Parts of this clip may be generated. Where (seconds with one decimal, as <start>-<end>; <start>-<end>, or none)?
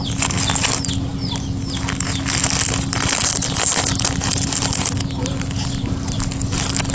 none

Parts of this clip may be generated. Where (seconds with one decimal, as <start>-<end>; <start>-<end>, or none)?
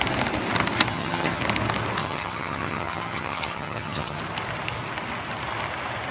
0.9-1.4; 2.0-4.2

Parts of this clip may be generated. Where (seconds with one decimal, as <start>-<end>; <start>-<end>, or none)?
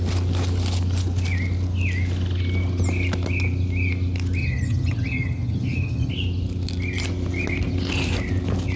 4.4-6.1